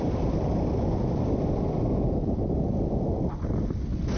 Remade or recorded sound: recorded